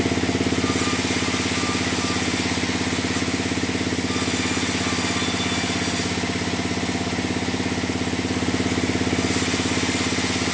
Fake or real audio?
real